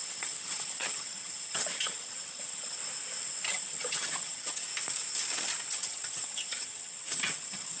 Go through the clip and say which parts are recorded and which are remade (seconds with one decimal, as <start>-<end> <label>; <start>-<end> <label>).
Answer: 0.0-2.8 remade; 2.8-3.5 recorded; 3.5-4.7 remade; 4.7-5.7 recorded; 5.7-7.8 remade

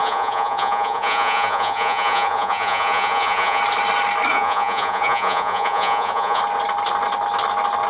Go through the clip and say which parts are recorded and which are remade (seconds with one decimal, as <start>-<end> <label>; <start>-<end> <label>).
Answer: 0.0-3.6 remade; 3.6-4.3 recorded; 4.3-6.4 remade; 6.4-7.9 recorded

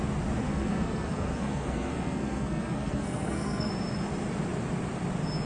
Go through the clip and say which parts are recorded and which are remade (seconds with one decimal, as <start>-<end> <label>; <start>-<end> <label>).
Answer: 0.0-0.4 recorded; 0.4-3.7 remade; 3.7-5.5 recorded

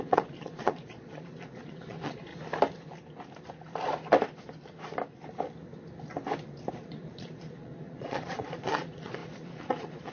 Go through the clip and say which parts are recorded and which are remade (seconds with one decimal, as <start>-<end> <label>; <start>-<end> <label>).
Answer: 0.0-2.3 remade; 2.3-6.7 recorded; 6.7-10.1 remade